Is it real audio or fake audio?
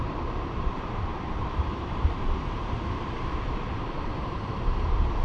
fake